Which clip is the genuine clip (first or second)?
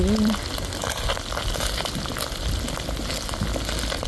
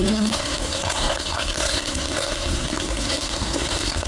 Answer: first